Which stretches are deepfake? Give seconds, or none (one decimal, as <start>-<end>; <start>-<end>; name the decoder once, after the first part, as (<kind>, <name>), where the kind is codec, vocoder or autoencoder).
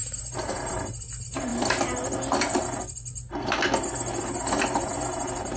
0.0-1.5 (vocoder, BigVGAN v2); 4.2-5.6